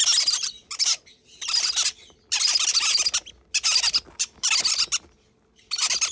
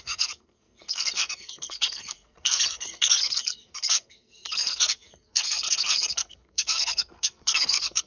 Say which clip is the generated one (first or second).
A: second